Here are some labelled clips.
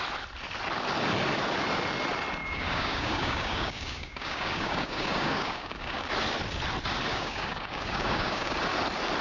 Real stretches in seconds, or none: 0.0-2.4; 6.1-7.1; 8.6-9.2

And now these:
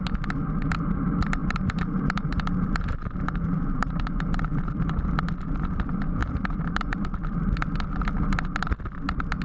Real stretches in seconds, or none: 0.0-1.4; 4.9-6.2; 7.5-9.4

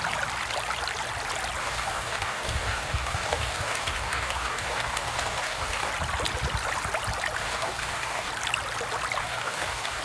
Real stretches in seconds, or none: 0.0-1.6; 5.9-7.4; 8.3-9.2

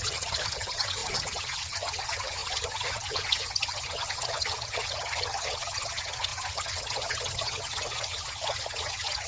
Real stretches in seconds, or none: none

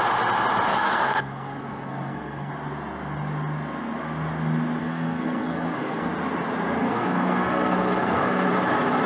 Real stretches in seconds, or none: 0.0-0.7; 2.5-4.8; 6.1-6.8; 8.5-9.1